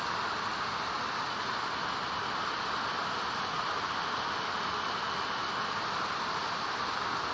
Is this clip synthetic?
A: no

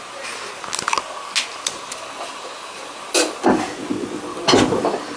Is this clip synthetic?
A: no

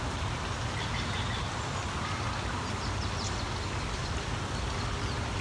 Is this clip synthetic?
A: no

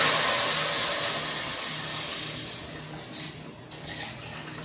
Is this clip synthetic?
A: no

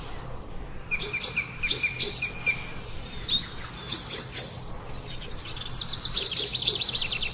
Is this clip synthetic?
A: no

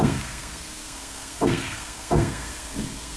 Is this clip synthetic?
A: yes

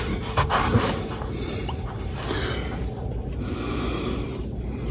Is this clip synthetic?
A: yes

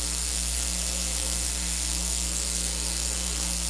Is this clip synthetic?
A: yes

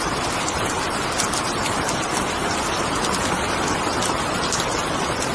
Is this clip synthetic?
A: yes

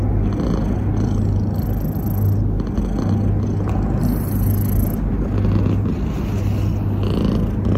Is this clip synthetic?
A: no